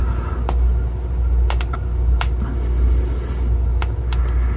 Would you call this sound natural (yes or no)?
yes